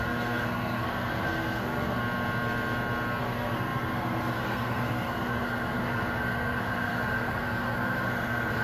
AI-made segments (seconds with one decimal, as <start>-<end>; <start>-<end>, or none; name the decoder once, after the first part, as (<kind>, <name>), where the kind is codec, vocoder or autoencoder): 0.0-2.0 (codec, SNAC); 3.2-8.6